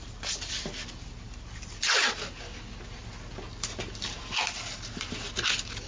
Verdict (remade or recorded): recorded